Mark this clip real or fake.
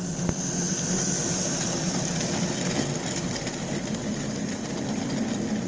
real